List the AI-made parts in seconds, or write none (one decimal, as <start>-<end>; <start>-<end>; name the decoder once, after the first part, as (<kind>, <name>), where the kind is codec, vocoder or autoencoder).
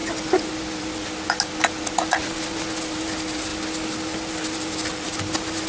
none